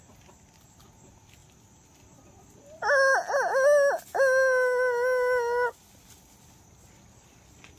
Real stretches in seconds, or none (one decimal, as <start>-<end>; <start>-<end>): 0.0-7.8